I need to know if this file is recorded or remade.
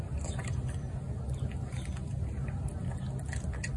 recorded